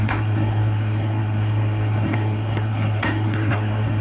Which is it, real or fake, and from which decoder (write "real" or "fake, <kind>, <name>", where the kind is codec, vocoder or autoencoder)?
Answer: fake, codec, SNAC